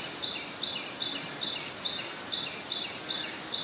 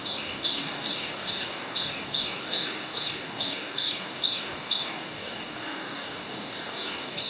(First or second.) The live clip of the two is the first